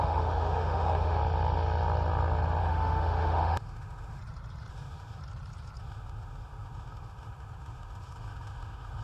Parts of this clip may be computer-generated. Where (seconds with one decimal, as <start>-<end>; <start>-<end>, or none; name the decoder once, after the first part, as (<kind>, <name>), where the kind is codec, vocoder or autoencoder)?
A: 0.0-1.2 (autoencoder, DAC-VAE); 2.6-4.2; 4.7-5.2; 5.8-9.0